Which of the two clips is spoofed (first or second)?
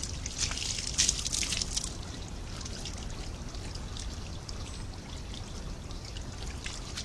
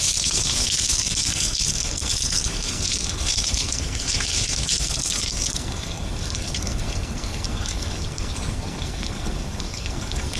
second